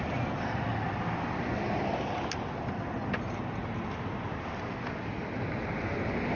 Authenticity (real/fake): real